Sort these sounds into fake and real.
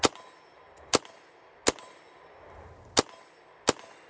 real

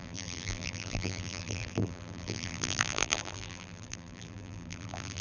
fake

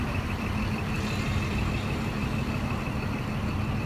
fake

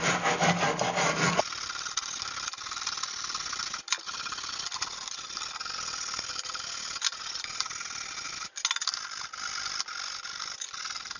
real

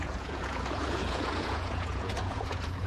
fake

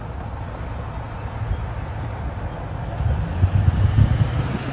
real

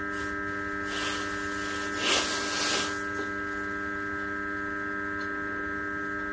real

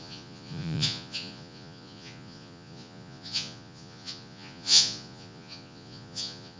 fake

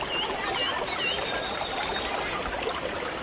real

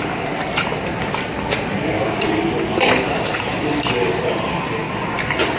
real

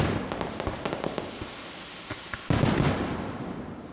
real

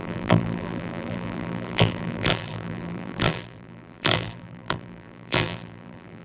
fake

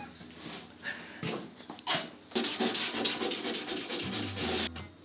real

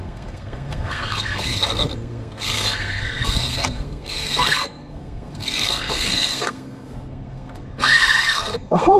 fake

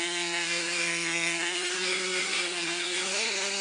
fake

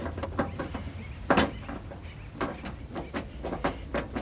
real